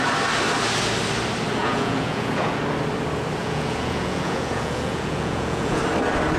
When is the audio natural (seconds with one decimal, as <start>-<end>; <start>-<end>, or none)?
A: 0.0-1.6; 2.6-3.4; 5.8-6.4